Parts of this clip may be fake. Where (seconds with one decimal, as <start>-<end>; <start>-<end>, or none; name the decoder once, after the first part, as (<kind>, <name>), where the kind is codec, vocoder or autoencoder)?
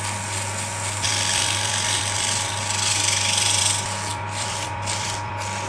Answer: 1.1-3.6 (vocoder, BigVGAN v2); 4.1-5.3